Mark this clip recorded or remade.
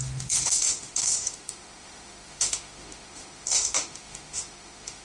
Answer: remade